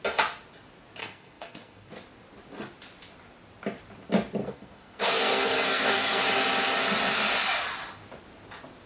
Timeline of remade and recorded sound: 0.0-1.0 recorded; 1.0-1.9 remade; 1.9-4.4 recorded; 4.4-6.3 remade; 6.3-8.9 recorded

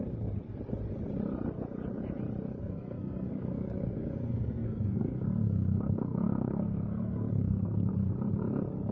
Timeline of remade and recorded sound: 0.0-2.6 recorded; 2.6-7.9 remade; 7.9-8.9 recorded

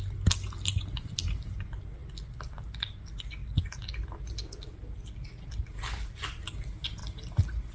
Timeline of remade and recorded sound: 0.0-7.7 recorded

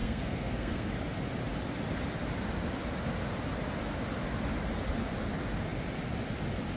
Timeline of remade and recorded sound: 0.0-0.9 remade; 0.9-6.8 recorded

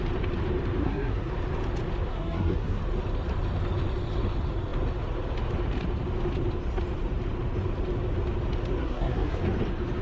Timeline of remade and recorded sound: 0.0-0.8 recorded; 0.8-1.3 remade; 1.3-2.1 recorded; 2.1-2.8 remade; 2.8-8.8 recorded; 8.8-9.4 remade; 9.4-10.0 recorded